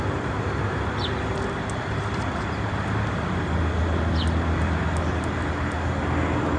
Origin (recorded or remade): recorded